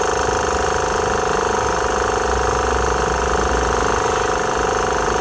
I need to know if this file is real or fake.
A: real